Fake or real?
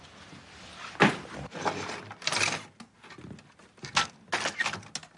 real